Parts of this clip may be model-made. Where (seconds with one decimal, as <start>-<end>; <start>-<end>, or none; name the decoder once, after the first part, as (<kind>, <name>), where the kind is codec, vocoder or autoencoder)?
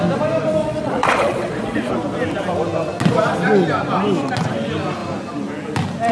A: 0.6-1.9 (vocoder, Vocos)